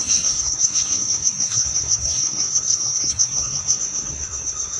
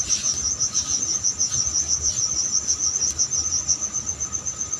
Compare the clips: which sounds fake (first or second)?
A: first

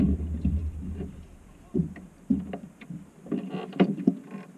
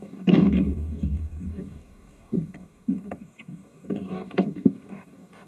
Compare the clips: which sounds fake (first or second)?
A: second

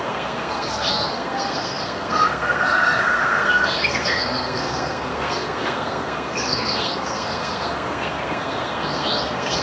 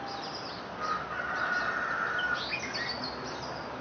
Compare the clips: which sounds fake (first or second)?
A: first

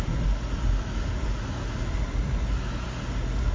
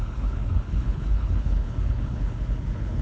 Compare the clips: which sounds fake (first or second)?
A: second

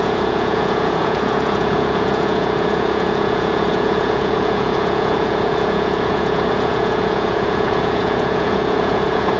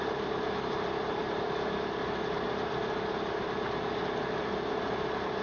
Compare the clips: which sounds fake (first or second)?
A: first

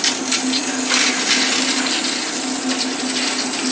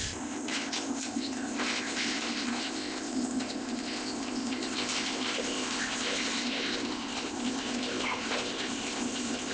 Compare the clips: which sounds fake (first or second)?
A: second